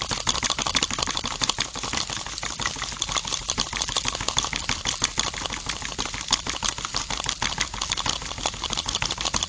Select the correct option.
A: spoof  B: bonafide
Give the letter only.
B